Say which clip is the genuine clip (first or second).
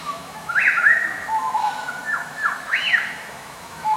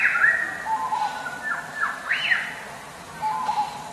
second